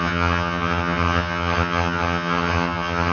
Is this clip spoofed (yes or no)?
yes